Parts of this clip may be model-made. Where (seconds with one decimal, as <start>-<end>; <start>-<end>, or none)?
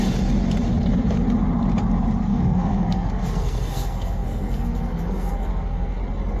2.3-6.0